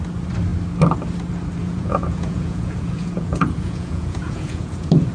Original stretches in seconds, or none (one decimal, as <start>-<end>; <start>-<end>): 0.0-1.6

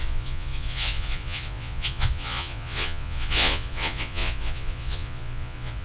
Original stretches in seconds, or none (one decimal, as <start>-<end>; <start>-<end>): none

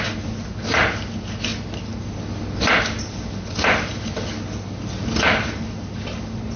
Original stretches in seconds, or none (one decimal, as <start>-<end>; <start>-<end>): 0.0-6.6

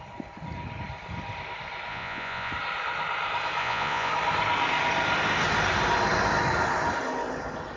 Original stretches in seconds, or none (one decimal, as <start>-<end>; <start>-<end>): 0.0-1.9; 2.5-3.6; 4.1-7.8

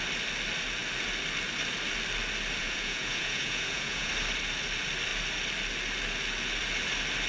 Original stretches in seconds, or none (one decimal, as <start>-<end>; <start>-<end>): 0.0-2.6; 4.1-7.3

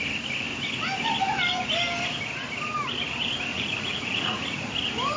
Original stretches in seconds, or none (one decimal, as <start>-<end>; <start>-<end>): 0.0-3.5; 4.6-5.2

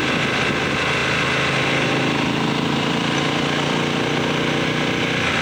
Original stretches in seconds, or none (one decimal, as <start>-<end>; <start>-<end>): 0.0-5.4

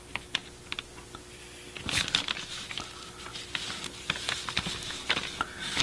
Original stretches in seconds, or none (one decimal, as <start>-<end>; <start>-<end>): 0.0-5.8